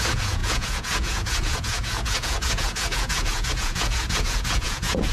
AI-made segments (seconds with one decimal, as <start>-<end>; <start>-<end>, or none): 0.0-5.1